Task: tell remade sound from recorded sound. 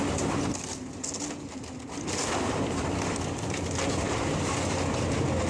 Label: recorded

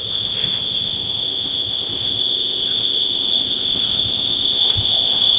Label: remade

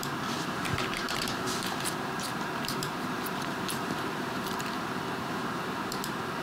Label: remade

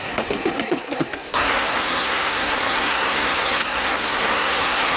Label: remade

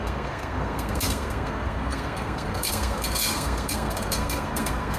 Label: remade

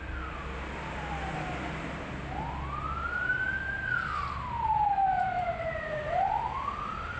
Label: recorded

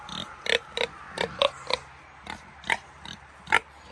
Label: recorded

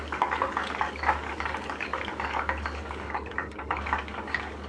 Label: remade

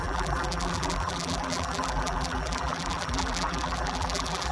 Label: remade